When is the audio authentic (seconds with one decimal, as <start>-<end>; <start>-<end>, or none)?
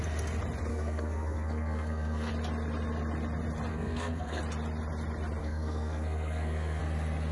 0.0-0.7; 2.3-3.7; 4.4-5.4; 6.8-7.3